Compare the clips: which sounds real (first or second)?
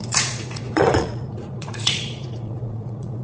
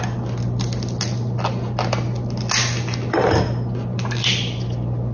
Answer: second